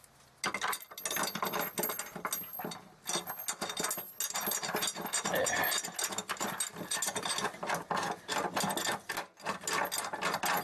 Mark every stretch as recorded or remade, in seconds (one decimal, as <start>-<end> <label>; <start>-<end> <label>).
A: 0.0-10.6 recorded